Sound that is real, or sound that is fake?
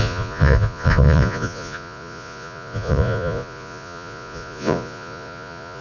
fake